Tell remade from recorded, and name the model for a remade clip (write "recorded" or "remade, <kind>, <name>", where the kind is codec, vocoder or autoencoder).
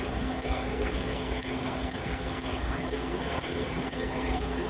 remade, codec, SNAC